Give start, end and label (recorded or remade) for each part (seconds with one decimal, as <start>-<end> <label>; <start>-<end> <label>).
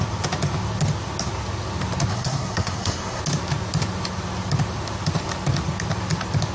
0.0-2.1 recorded; 2.1-3.2 remade; 3.2-6.5 recorded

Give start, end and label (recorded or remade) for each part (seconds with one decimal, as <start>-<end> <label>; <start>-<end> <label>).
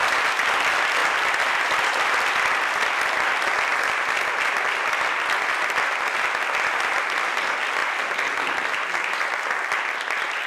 0.0-10.5 recorded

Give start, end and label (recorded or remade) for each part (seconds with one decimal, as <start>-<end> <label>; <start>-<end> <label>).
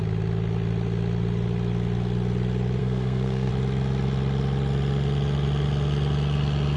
0.0-2.8 recorded; 2.8-3.5 remade; 3.5-6.8 recorded